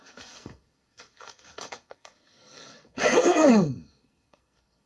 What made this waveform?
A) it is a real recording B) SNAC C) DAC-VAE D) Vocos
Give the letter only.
B